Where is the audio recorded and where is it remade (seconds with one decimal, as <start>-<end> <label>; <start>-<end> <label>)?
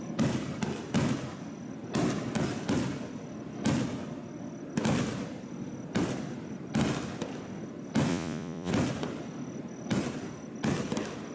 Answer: 0.0-8.1 recorded; 8.1-8.7 remade; 8.7-11.3 recorded